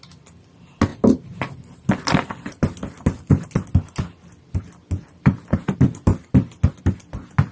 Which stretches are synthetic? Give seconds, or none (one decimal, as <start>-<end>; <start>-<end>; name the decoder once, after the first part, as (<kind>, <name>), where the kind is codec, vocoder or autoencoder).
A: none

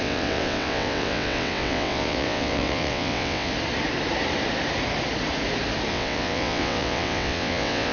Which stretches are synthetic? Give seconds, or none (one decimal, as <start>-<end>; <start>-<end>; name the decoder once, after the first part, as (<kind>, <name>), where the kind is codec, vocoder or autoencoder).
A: 0.0-3.5 (vocoder, WaveNeXt); 5.9-7.9

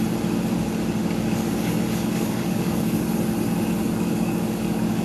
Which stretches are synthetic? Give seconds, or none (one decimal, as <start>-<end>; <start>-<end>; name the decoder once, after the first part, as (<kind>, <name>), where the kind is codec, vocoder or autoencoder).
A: 1.0-3.1 (codec, DAC); 3.8-5.0